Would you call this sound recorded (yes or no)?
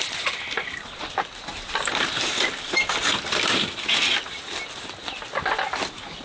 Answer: yes